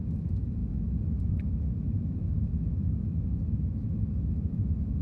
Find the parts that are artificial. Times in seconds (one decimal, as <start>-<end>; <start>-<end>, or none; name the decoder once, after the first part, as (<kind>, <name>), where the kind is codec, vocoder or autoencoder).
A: 0.0-5.0 (autoencoder, DAC-VAE)